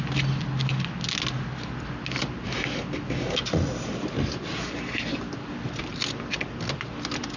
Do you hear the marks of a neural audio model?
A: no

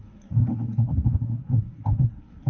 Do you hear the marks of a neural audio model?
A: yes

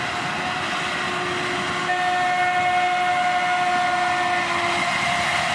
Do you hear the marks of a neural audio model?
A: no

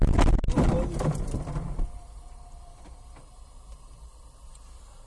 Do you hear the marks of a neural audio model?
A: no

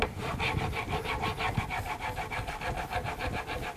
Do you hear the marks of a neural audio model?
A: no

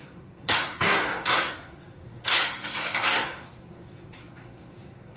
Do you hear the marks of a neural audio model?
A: yes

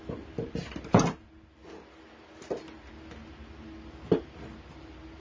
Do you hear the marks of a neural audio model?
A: no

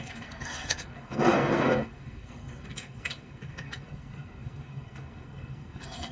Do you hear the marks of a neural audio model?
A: yes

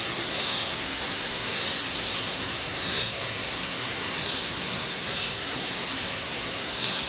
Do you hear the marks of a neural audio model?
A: yes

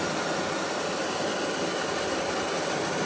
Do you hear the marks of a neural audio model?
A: no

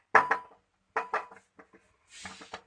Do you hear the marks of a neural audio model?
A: no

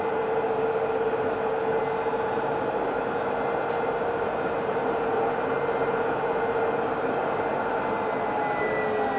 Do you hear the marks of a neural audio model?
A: no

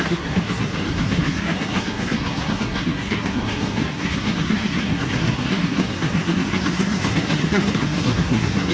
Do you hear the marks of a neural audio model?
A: yes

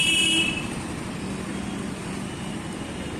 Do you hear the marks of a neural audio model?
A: no